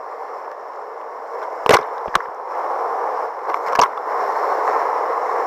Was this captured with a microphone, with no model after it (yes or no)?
yes